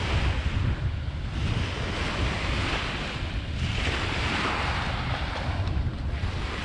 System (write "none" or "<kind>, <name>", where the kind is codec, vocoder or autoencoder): none